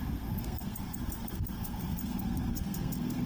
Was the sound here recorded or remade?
remade